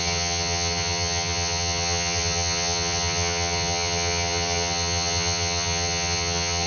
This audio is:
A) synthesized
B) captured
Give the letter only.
A